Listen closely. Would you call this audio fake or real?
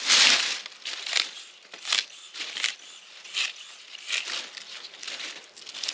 real